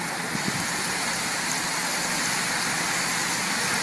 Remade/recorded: recorded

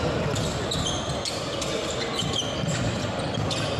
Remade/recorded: recorded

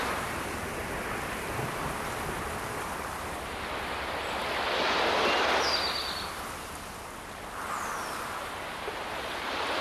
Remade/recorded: recorded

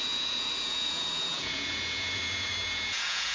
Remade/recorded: remade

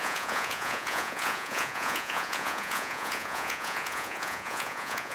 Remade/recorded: remade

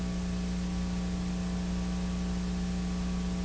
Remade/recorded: recorded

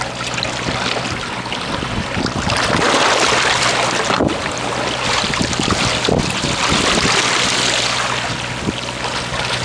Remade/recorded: recorded